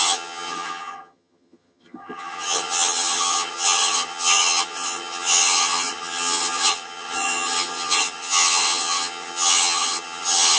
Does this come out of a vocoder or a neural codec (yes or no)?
yes